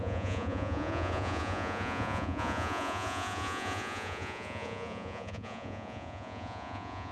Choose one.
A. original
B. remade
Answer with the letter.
B